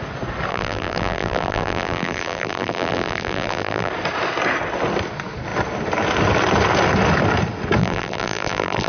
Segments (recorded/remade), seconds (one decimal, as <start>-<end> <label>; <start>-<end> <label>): 0.0-0.5 recorded; 0.5-3.9 remade; 3.9-7.8 recorded; 7.8-8.9 remade